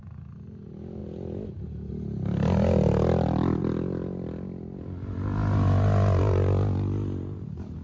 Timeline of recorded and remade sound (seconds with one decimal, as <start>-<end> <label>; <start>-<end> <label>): 0.0-7.8 recorded

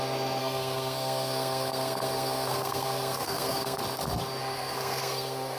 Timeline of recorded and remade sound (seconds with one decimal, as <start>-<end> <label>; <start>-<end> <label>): 0.0-0.4 recorded; 0.4-3.8 remade; 3.8-4.4 recorded; 4.4-5.6 remade

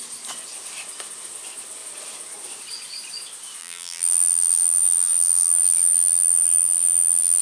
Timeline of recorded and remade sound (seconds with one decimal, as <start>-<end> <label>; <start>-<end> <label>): 0.0-3.6 recorded; 3.6-7.4 remade

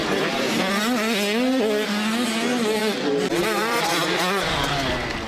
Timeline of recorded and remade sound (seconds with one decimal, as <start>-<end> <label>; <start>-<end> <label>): 0.0-0.7 remade; 0.7-2.8 recorded; 2.8-4.5 remade; 4.5-5.3 recorded